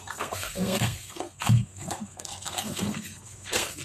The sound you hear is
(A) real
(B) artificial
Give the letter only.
B